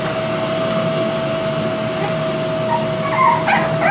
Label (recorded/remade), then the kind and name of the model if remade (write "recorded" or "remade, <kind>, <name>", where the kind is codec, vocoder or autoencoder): recorded